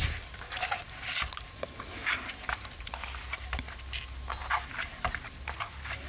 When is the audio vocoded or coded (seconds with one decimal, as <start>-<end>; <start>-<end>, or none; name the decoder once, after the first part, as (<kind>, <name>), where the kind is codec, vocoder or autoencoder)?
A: none